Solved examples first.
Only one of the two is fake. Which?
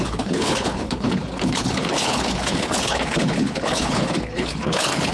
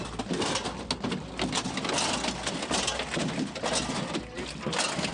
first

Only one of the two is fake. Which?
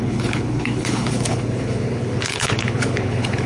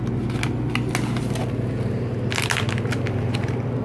first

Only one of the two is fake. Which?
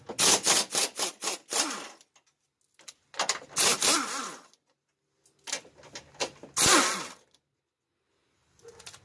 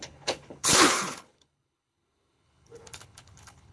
second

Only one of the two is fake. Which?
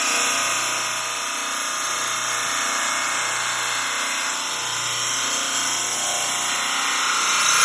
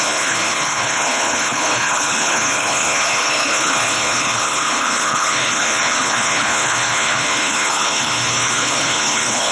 second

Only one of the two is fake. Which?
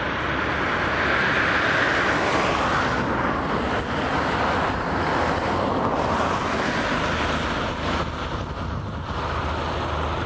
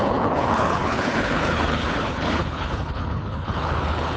second